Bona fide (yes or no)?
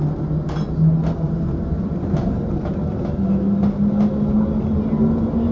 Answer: yes